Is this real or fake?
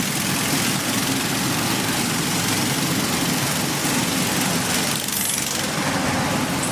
real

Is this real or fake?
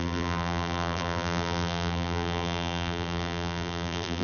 fake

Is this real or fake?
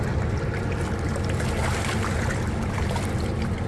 real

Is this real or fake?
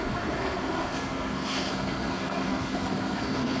fake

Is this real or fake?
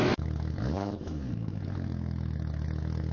fake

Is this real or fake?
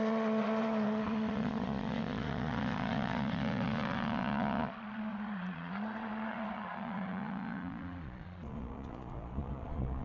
fake